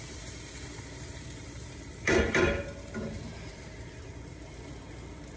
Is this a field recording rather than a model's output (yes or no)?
no